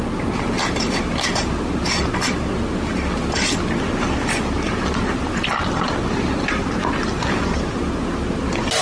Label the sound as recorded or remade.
recorded